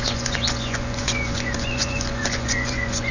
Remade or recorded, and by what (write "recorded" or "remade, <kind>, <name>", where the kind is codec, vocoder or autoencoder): remade, vocoder, Vocos